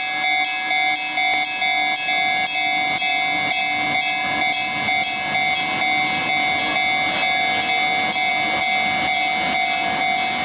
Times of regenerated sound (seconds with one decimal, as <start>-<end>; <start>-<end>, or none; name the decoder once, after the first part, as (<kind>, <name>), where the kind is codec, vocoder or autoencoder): none